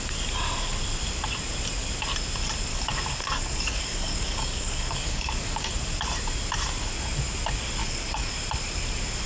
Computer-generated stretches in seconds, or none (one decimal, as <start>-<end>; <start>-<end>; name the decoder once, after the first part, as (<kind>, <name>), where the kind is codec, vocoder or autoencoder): 2.7-5.7 (codec, DAC); 7.8-8.3